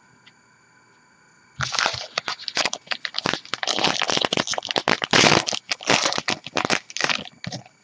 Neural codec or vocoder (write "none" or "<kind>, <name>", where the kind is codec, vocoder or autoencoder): none